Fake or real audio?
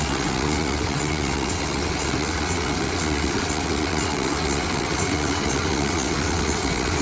fake